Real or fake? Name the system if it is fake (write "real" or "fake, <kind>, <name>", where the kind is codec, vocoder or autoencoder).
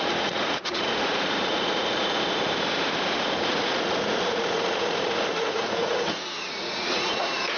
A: fake, vocoder, Vocos